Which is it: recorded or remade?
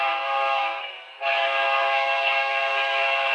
remade